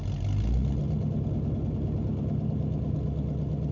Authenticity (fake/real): real